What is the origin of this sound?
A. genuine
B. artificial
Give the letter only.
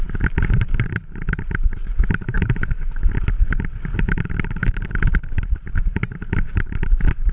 A